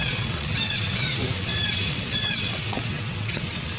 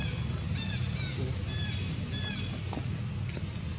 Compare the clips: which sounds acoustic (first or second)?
second